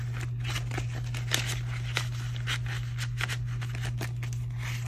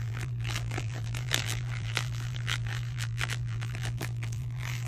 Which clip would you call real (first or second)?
first